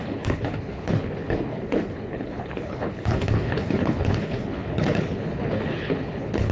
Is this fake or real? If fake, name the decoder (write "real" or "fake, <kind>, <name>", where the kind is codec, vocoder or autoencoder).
fake, codec, HILCodec